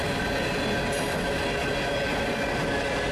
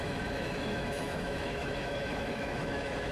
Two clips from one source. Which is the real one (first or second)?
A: first